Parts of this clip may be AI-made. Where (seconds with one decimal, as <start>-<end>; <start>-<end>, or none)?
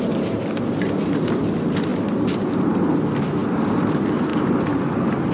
none